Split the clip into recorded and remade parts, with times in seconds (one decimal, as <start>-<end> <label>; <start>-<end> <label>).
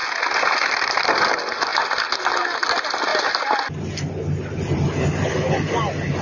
0.0-0.5 recorded; 0.5-1.7 remade; 1.7-2.7 recorded; 2.7-3.1 remade; 3.1-4.5 recorded; 4.5-6.2 remade